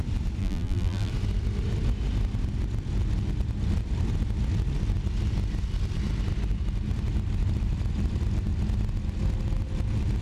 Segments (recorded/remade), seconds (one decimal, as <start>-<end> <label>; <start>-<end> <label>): 0.0-0.4 recorded; 0.4-1.1 remade; 1.1-10.2 recorded